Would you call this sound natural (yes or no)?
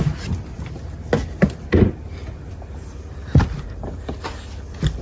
yes